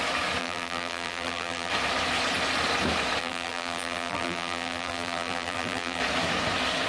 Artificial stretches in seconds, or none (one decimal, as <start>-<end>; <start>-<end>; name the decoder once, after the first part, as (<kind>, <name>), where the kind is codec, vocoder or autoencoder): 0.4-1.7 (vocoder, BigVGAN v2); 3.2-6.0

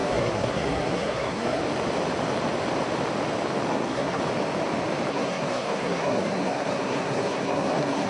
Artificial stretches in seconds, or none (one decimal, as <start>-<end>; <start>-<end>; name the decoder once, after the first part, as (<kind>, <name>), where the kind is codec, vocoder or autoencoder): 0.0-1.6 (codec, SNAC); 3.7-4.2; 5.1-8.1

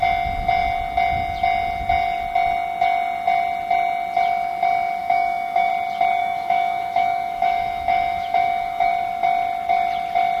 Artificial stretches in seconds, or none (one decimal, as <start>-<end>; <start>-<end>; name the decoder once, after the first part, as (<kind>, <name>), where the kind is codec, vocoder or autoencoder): 5.0-5.7 (autoencoder, DAC-VAE); 6.2-8.9